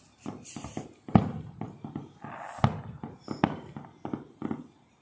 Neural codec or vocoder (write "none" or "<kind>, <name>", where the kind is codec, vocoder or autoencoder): none